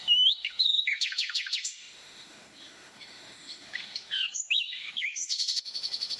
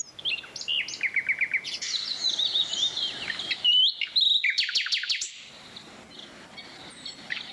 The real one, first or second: second